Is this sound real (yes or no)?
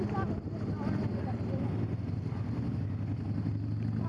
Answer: yes